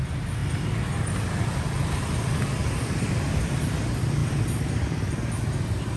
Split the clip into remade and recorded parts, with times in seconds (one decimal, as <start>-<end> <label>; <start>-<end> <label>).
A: 0.0-2.6 recorded; 2.6-3.8 remade; 3.8-6.0 recorded